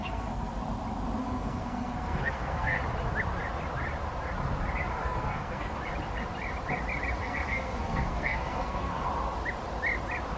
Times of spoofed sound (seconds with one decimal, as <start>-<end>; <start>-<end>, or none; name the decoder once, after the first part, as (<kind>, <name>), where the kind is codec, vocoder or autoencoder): 0.0-0.5 (codec, SNAC); 1.2-2.8; 4.9-5.8; 7.2-9.1